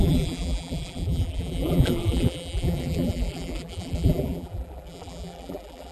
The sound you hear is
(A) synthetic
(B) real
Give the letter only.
A